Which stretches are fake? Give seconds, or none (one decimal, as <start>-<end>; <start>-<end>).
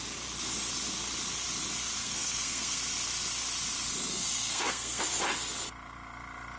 2.0-2.8; 4.1-5.0